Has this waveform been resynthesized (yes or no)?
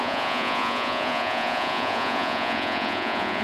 yes